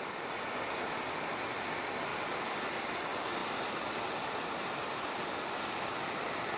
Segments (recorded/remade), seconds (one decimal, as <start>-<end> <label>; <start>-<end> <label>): 0.0-6.6 recorded